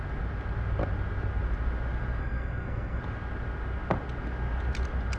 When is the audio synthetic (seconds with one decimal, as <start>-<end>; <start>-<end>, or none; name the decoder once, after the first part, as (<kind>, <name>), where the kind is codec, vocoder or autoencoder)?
2.2-3.0 (codec, SNAC)